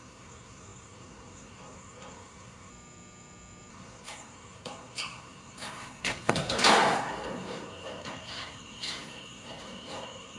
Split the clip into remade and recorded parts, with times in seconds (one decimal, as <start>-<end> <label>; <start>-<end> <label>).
0.0-2.7 remade; 2.7-3.7 recorded; 3.7-10.4 remade